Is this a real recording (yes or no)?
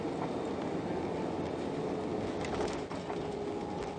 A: yes